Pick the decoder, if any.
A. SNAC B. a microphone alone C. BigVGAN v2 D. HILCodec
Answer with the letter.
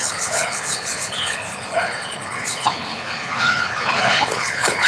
D